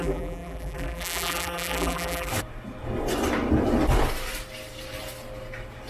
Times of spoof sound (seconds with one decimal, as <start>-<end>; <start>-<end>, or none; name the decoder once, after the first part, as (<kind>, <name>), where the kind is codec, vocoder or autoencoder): 0.0-2.3 (vocoder, BigVGAN v2)